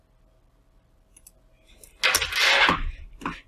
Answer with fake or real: real